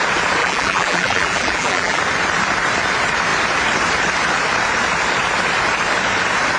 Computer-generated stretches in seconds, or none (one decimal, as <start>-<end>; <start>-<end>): 0.4-2.0